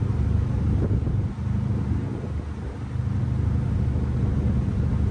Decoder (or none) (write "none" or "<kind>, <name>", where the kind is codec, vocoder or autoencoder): none